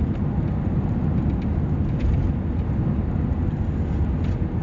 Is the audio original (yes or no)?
yes